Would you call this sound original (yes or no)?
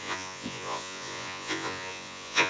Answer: no